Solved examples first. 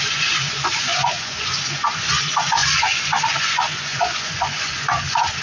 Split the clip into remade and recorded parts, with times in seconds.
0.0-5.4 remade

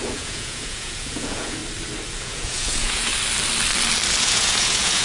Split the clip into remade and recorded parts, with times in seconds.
0.0-1.6 remade; 1.6-2.2 recorded; 2.2-3.1 remade; 3.1-4.2 recorded; 4.2-5.0 remade

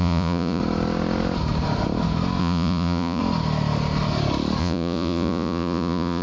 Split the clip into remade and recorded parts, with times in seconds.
0.0-0.6 remade; 0.6-2.4 recorded; 2.4-3.2 remade; 3.2-4.6 recorded; 4.6-6.2 remade

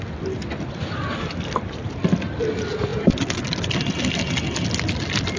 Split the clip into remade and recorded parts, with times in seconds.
0.0-5.4 recorded

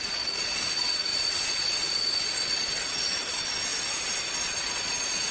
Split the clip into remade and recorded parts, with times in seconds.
0.0-5.3 remade

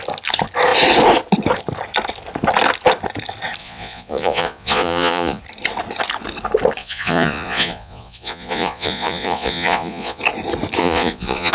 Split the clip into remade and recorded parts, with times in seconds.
0.0-3.6 recorded; 3.6-5.4 remade; 5.4-6.8 recorded; 6.8-10.2 remade; 10.2-10.8 recorded; 10.8-11.5 remade

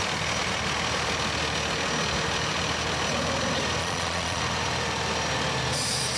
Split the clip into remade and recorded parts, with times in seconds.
0.0-3.8 recorded; 3.8-4.4 remade; 4.4-6.2 recorded